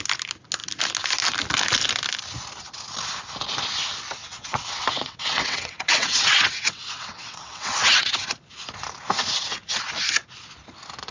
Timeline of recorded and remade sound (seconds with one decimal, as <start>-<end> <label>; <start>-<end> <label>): 0.0-4.2 recorded; 4.2-8.3 remade; 8.3-11.1 recorded